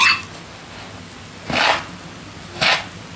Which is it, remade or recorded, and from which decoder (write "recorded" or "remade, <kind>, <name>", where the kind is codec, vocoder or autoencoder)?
recorded